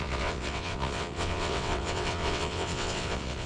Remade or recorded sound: remade